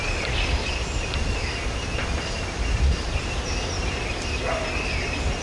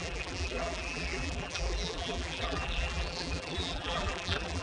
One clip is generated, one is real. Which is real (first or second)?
first